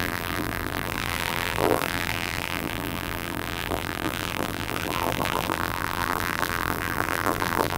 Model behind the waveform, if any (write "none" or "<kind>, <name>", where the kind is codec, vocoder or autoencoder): vocoder, BigVGAN v2